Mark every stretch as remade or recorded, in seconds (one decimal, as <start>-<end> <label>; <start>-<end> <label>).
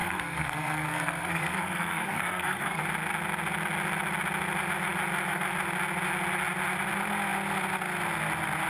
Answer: 0.0-2.8 remade; 2.8-8.7 recorded